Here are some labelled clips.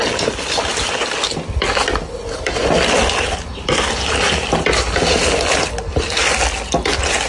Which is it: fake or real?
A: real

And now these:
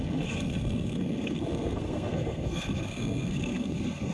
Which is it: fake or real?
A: fake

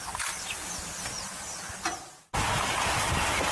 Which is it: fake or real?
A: real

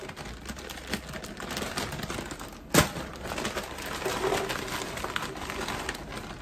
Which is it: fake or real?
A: real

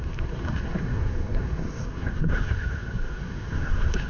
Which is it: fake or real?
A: fake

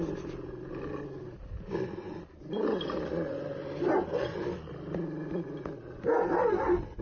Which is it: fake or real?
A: real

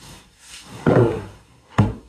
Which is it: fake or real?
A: fake